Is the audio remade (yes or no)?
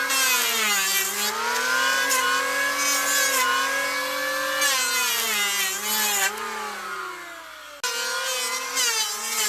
no